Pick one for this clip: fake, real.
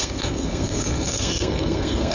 fake